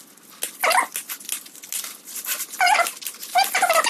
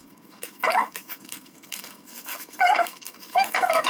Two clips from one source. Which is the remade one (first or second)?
second